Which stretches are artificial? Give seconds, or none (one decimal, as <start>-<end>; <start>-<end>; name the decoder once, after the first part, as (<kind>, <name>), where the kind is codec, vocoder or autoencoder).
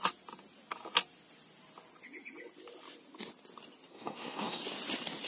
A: 3.9-4.6 (codec, SNAC)